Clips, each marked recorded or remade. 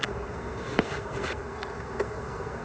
remade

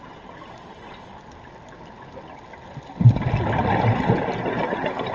recorded